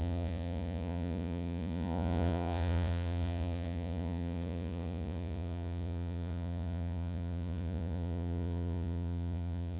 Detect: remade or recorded remade